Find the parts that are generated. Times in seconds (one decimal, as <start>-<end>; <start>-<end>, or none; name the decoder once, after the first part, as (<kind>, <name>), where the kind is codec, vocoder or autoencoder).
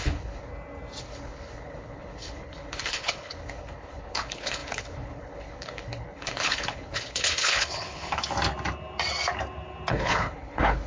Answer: 0.0-0.5 (codec, HILCodec); 1.0-8.2; 9.9-10.9